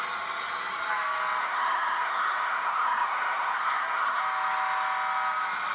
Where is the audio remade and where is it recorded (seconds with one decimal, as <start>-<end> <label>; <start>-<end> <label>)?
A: 0.0-1.4 recorded; 1.4-4.2 remade; 4.2-5.7 recorded